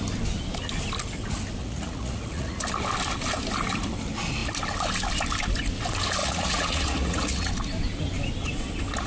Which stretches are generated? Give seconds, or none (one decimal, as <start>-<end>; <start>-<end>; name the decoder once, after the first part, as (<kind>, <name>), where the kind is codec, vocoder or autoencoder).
1.6-2.6 (vocoder, Vocos); 6.2-7.5